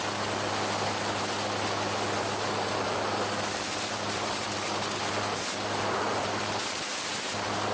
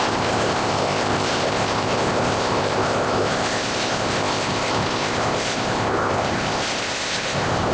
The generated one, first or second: second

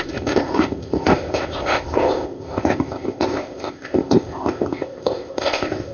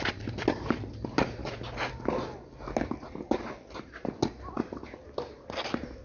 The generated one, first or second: first